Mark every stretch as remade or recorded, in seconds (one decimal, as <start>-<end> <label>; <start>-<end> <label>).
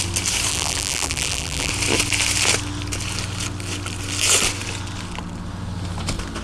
0.0-0.5 recorded; 0.5-1.7 remade; 1.7-6.4 recorded